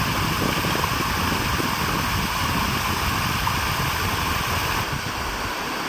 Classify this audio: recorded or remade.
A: recorded